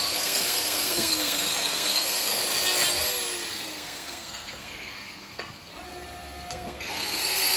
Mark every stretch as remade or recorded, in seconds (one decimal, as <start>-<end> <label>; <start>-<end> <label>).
0.0-2.4 remade; 2.4-3.5 recorded; 3.5-5.7 remade; 5.7-6.5 recorded; 6.5-7.6 remade